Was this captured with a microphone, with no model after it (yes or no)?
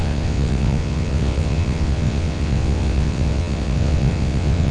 no